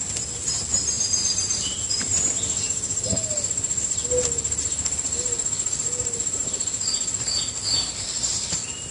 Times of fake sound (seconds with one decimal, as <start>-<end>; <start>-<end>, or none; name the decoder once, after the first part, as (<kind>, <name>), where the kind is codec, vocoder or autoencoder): 0.7-2.3 (vocoder, BigVGAN v2)

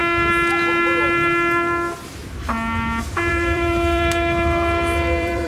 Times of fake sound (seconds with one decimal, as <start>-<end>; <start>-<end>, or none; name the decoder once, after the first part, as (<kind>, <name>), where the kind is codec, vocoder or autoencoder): 3.3-5.5 (vocoder, BigVGAN v2)